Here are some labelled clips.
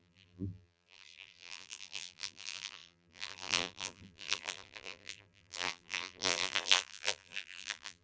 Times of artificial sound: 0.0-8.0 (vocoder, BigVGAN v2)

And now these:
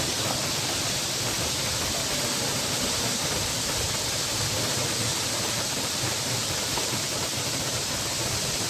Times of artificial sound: 5.1-7.9 (vocoder, BigVGAN v2)

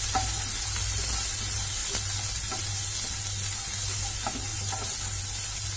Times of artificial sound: none